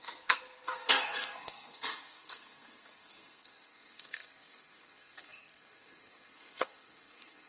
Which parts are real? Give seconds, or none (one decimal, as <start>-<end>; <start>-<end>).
none